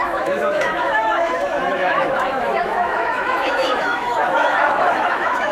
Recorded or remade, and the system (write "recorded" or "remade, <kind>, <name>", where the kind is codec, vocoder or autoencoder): remade, autoencoder, DAC-VAE